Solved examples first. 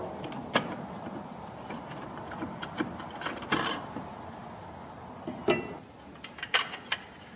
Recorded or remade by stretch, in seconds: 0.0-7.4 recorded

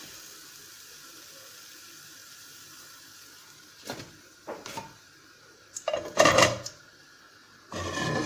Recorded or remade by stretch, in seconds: 0.0-2.2 recorded; 2.2-7.2 remade; 7.2-8.3 recorded